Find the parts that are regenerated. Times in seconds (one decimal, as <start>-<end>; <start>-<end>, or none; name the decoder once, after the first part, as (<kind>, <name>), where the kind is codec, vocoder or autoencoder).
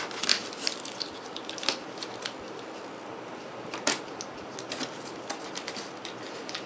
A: none